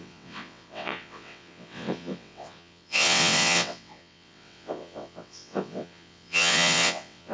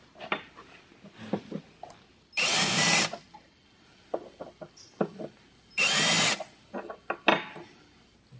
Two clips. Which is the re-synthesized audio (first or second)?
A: first